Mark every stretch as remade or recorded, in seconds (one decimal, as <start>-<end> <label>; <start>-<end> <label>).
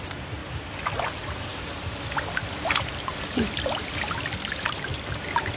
0.0-5.6 recorded